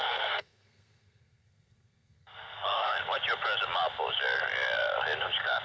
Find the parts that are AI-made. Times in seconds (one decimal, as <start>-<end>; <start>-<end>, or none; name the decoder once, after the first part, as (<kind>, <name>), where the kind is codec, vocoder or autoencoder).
0.0-3.0 (codec, SNAC)